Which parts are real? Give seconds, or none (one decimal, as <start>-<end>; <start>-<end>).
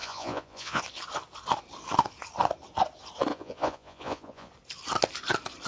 0.8-3.3; 4.5-5.7